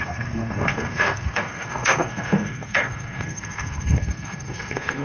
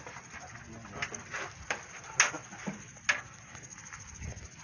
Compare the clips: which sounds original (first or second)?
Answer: second